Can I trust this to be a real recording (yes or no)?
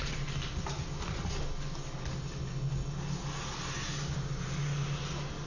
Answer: yes